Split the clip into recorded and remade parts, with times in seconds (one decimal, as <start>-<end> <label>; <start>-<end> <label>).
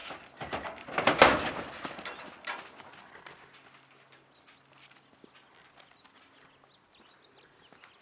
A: 0.0-8.0 recorded